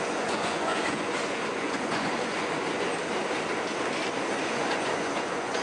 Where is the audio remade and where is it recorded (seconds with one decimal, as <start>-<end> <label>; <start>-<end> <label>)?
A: 0.0-2.9 remade; 2.9-4.3 recorded; 4.3-5.6 remade